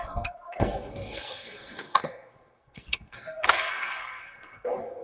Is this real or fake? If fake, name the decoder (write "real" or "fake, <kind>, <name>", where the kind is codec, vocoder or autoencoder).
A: fake, codec, SNAC